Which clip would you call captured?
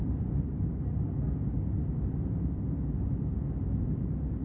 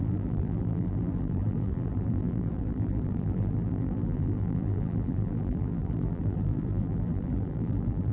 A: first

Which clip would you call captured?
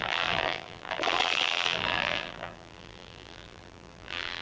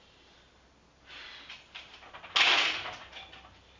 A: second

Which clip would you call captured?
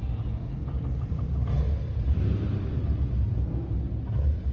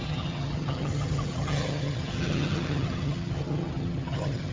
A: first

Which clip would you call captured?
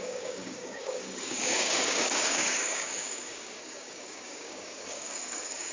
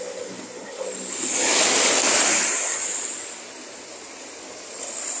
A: second